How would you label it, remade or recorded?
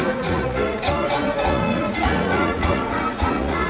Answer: remade